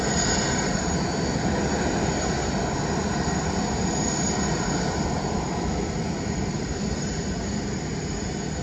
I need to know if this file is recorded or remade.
recorded